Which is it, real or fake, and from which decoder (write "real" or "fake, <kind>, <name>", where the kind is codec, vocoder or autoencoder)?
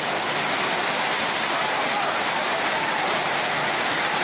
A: real